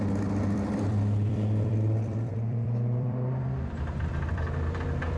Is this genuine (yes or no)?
no